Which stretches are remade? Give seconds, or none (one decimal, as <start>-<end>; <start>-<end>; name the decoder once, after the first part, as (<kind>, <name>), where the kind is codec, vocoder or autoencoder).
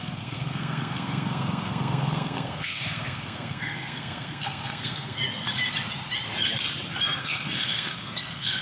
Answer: 0.0-5.2 (codec, SNAC); 7.2-8.6